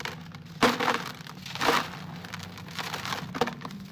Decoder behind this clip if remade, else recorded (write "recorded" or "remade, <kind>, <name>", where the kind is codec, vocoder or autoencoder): remade, vocoder, BigVGAN v2